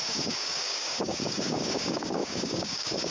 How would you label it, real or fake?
fake